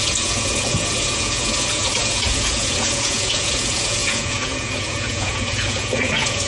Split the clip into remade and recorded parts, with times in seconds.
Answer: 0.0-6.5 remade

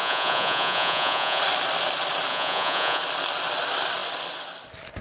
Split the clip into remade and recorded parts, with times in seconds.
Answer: 0.0-1.4 remade; 1.4-2.3 recorded; 2.3-3.0 remade; 3.0-5.0 recorded

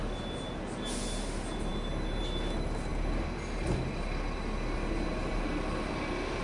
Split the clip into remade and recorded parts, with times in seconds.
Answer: 0.0-6.4 recorded